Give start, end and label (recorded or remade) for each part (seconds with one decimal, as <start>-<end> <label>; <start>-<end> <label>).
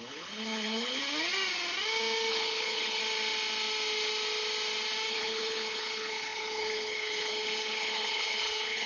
0.0-1.0 remade; 1.0-2.3 recorded; 2.3-3.0 remade; 3.0-5.1 recorded; 5.1-8.9 remade